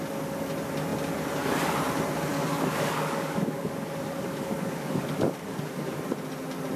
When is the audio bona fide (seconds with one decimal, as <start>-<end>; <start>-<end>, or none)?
0.0-2.3; 6.0-6.8